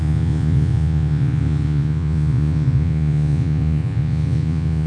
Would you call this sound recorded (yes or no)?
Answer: no